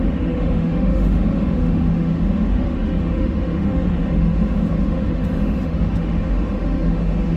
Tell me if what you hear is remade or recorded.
remade